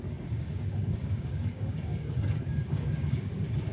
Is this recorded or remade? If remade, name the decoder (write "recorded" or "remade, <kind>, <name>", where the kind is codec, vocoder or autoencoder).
remade, codec, DAC